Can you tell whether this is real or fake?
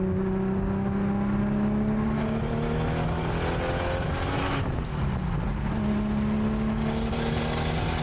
real